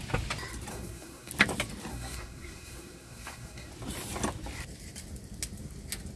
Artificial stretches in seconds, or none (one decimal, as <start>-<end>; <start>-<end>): 0.7-1.3; 1.9-3.7

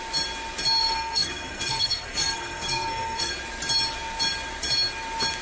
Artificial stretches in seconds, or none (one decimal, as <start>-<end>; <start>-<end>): 0.8-3.3

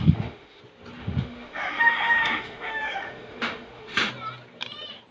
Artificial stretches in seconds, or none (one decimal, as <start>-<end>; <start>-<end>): 0.0-0.6; 1.0-4.1